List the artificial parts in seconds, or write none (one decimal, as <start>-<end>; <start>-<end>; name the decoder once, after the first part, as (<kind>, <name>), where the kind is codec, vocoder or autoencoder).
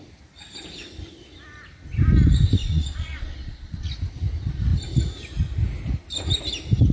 2.6-3.9 (vocoder, Vocos)